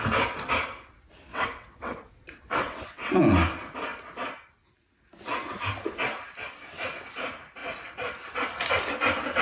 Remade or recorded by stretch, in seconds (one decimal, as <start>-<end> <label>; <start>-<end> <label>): 0.0-1.3 recorded; 1.3-3.2 remade; 3.2-9.4 recorded